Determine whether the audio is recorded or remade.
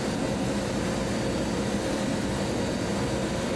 recorded